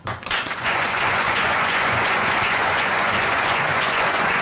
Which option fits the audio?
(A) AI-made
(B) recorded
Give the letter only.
A